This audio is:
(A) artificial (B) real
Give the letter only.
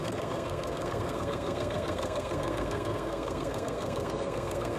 A